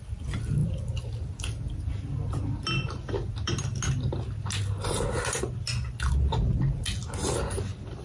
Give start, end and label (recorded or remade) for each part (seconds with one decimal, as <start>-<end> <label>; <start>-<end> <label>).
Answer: 0.0-8.0 recorded